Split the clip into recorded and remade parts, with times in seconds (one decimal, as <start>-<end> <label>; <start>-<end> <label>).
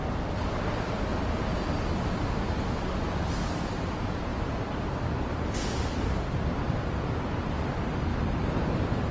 0.0-4.3 recorded; 4.3-7.2 remade; 7.2-9.1 recorded